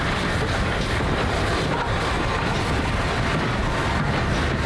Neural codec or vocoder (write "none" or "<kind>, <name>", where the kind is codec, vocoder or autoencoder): none